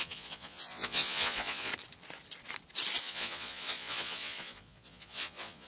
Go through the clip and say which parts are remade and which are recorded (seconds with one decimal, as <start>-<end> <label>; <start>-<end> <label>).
0.0-1.7 remade; 1.7-3.0 recorded; 3.0-5.7 remade